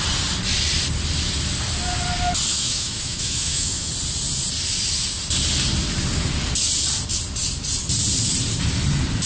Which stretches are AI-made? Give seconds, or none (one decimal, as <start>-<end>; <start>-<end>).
2.5-3.9